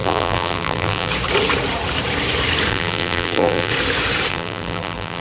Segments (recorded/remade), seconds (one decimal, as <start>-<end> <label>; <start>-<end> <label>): 0.0-1.1 remade; 1.1-2.7 recorded; 2.7-3.7 remade; 3.7-4.3 recorded; 4.3-5.2 remade